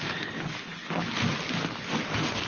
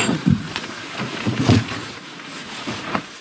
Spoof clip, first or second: second